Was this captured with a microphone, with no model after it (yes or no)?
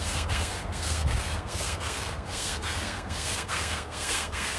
no